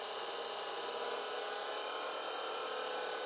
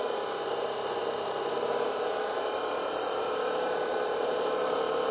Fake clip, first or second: second